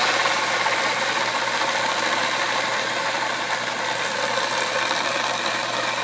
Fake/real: real